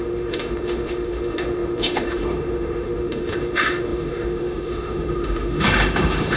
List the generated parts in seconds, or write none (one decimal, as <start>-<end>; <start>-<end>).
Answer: 0.0-6.4